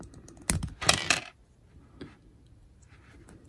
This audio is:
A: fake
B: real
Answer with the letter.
B